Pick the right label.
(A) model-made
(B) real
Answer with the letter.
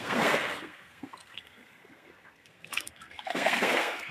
A